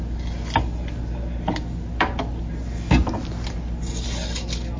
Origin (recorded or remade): recorded